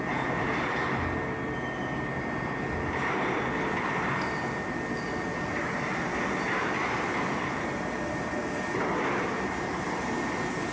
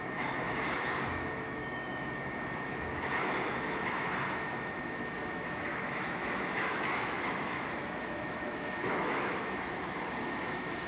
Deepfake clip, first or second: second